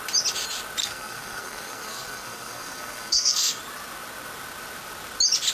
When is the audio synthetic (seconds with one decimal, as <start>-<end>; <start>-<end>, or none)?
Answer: 0.8-3.6